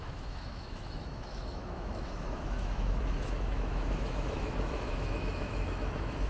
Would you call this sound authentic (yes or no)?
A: no